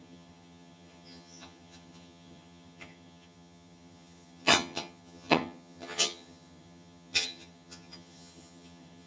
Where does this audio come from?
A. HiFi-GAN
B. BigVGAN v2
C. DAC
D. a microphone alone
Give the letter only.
A